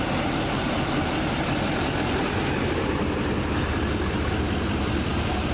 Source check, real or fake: real